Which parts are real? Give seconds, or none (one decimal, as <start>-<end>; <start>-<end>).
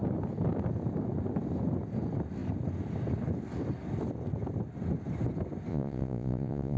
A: 0.0-5.7